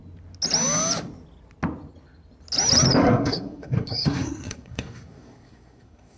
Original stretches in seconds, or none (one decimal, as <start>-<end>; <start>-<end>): 0.0-3.0

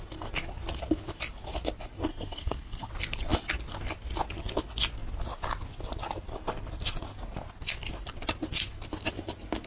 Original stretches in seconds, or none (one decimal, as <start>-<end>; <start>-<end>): 0.0-2.1; 2.9-9.7

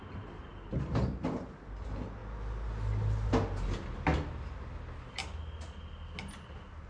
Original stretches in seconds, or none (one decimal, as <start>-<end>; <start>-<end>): 0.0-6.9

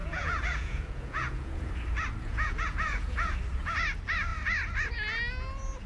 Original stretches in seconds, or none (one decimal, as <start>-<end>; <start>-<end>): 1.7-2.2; 3.4-5.9

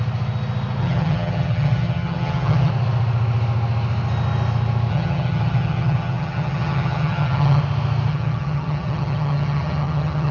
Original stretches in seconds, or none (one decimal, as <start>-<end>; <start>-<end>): 0.0-0.8; 2.7-4.9; 7.6-8.1

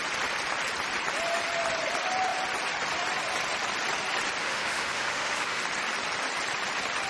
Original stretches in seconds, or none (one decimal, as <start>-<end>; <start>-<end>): 0.0-4.4; 5.6-7.1

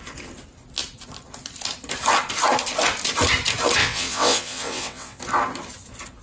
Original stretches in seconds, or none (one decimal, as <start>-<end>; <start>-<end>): 0.0-3.8; 5.2-6.2

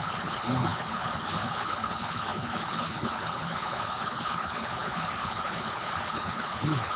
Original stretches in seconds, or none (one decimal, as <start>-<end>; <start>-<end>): none